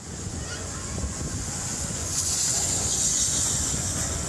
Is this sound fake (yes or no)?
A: yes